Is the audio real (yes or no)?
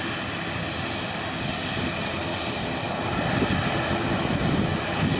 yes